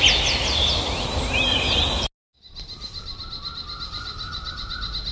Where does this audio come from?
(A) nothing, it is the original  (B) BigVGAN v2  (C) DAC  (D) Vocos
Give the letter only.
A